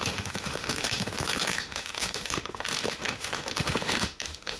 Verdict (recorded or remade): remade